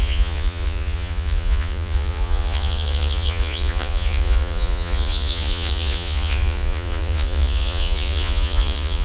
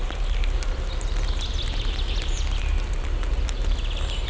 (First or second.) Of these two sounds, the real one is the second